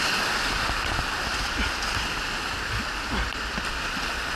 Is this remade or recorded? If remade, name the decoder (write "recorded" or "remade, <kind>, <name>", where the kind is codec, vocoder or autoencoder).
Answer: recorded